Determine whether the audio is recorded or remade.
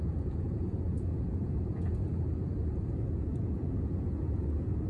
remade